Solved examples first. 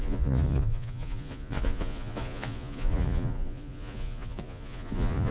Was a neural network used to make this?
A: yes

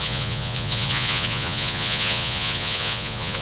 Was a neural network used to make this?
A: yes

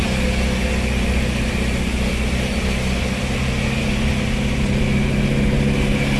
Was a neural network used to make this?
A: no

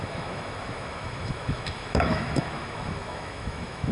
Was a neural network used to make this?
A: yes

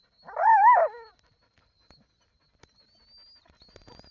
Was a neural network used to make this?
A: no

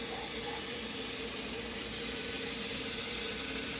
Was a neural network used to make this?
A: yes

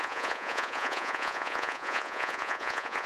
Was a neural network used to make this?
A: yes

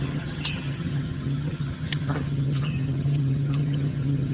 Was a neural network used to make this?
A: yes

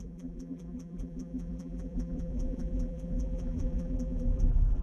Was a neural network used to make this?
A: yes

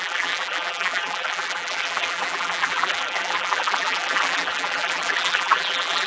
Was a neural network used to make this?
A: yes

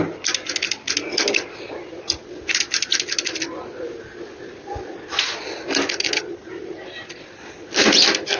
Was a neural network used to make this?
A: no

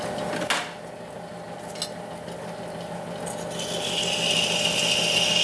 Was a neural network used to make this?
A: no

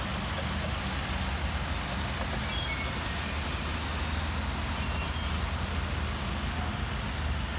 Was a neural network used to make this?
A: no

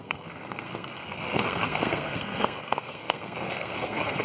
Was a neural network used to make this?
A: yes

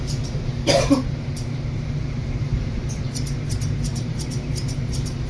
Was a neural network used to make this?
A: yes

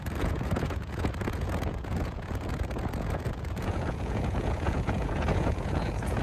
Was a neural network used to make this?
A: yes